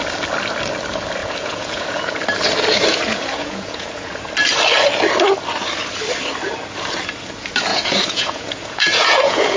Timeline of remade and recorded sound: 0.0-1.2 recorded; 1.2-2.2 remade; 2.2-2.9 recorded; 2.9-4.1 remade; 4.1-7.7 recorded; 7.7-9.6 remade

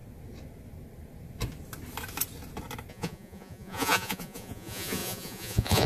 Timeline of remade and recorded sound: 0.0-2.9 recorded; 2.9-5.9 remade

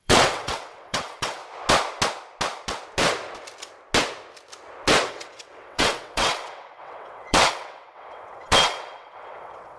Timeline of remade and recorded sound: 0.0-1.4 remade; 1.4-5.1 recorded; 5.1-9.8 remade